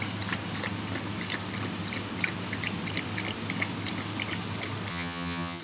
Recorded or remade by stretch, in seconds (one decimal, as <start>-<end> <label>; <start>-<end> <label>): 0.0-4.9 recorded; 4.9-5.6 remade